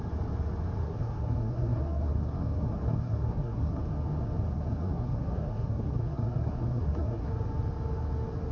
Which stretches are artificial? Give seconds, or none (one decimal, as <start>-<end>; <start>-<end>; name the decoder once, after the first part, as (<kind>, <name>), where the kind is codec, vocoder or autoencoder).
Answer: 0.8-3.8 (codec, SNAC); 4.5-7.3